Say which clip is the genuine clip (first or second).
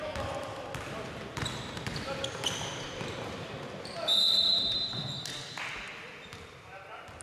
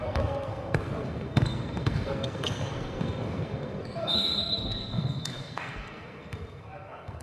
first